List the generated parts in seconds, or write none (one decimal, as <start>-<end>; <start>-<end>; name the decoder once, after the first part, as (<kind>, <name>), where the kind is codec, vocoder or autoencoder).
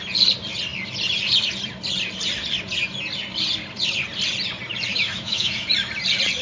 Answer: 4.9-5.6 (autoencoder, DAC-VAE)